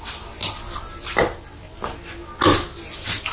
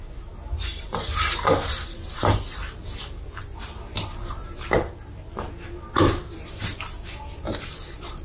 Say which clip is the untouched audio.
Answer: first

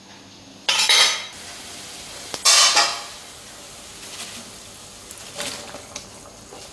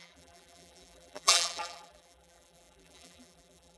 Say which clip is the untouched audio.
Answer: first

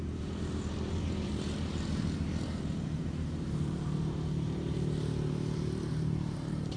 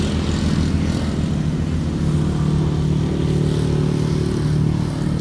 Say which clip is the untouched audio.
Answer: second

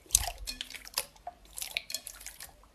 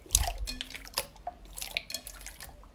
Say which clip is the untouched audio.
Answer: second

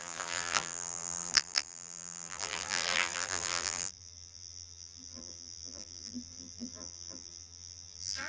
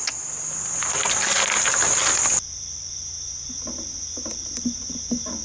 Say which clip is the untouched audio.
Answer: second